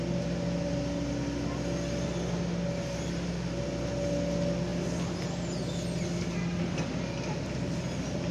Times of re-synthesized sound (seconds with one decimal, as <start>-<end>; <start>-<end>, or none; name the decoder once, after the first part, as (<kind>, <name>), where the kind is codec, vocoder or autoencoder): none